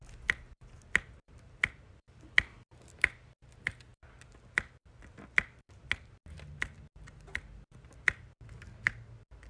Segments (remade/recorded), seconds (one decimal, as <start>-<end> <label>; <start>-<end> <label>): 0.0-9.5 recorded